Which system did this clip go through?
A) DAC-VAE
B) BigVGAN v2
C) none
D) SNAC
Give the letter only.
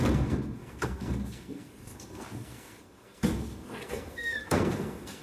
D